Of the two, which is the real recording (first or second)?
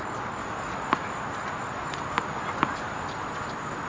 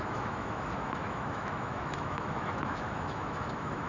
first